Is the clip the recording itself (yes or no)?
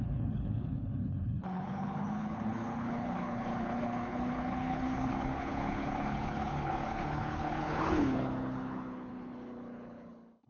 no